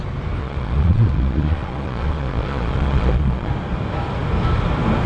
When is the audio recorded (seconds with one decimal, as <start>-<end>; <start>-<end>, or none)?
0.0-0.4; 3.5-5.1